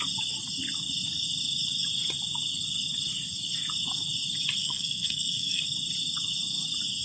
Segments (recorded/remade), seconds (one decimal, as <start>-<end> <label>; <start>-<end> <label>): 0.0-4.6 recorded; 4.6-5.6 remade; 5.6-7.0 recorded